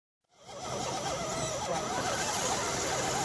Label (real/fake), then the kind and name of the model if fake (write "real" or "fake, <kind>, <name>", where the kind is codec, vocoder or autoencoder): real